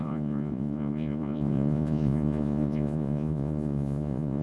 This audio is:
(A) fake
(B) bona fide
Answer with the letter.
A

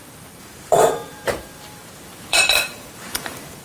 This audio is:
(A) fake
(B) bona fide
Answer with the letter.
A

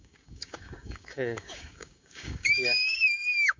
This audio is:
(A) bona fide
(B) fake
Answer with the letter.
B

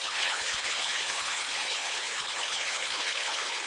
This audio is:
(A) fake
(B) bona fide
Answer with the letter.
A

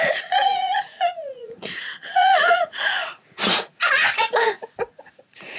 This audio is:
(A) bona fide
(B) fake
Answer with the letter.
B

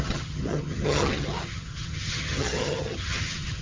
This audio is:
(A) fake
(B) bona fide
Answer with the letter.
A